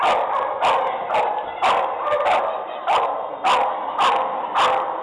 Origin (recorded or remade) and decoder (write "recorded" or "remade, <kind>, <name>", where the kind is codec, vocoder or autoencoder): recorded